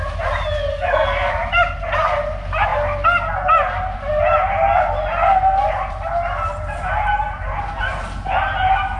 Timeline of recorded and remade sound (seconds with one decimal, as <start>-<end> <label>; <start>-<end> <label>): 0.0-0.7 recorded; 0.7-1.3 remade; 1.3-9.0 recorded